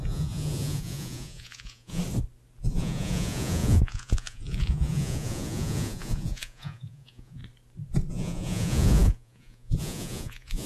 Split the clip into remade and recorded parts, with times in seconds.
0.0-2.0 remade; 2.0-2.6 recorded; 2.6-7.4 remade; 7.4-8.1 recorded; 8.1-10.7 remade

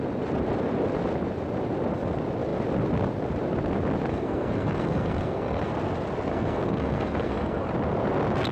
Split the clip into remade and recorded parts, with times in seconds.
0.0-4.1 recorded; 4.1-5.7 remade; 5.7-6.3 recorded; 6.3-7.7 remade; 7.7-8.5 recorded